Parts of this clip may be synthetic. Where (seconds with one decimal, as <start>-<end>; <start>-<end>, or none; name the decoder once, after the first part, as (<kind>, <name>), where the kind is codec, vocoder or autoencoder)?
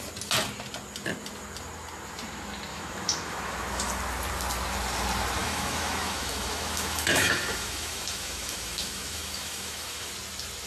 2.7-3.9 (autoencoder, DAC-VAE); 5.4-10.1